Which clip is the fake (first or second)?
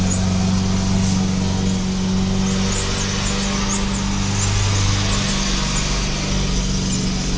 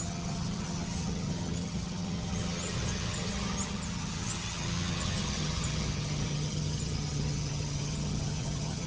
second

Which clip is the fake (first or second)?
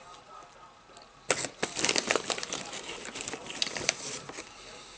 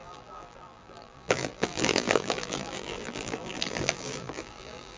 second